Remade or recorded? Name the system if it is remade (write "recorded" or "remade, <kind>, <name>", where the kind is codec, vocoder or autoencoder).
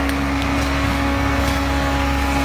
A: remade, codec, SNAC